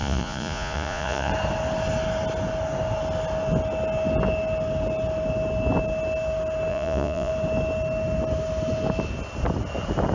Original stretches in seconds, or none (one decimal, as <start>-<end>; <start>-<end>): 1.3-6.7; 7.3-10.1